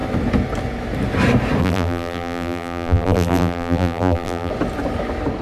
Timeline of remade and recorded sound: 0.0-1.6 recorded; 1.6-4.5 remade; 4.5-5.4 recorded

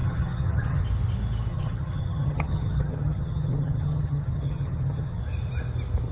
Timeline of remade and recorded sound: 0.0-0.8 remade; 0.8-1.5 recorded; 1.5-5.2 remade; 5.2-6.1 recorded

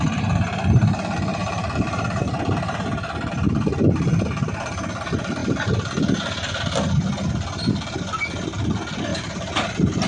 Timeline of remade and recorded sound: 0.0-1.4 recorded; 1.4-3.3 remade; 3.3-9.1 recorded; 9.1-10.1 remade

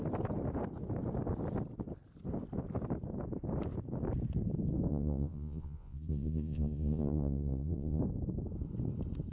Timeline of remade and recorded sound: 0.0-4.9 recorded; 4.9-8.0 remade; 8.0-9.3 recorded

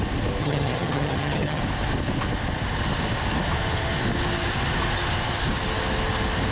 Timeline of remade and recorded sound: 0.0-0.4 recorded; 0.4-1.6 remade; 1.6-6.5 recorded

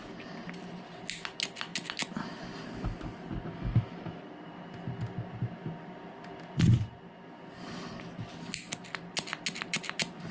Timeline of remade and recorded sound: 0.0-10.3 recorded